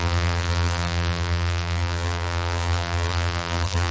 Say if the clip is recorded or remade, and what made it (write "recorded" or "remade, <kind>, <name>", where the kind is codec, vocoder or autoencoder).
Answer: remade, vocoder, BigVGAN v2